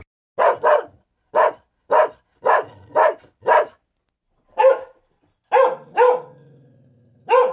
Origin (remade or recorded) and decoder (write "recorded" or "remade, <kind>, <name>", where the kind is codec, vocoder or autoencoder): recorded